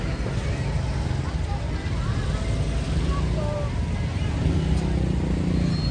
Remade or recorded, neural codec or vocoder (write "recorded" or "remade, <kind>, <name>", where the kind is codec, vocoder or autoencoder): recorded